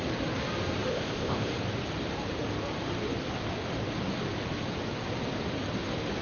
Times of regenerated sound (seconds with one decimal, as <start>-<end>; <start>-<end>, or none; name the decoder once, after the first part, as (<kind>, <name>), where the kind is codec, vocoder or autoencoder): 0.9-1.5 (codec, ZipCodec)